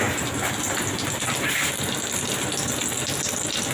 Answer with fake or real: real